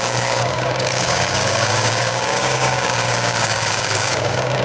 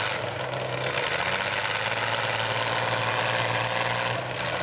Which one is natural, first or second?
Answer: second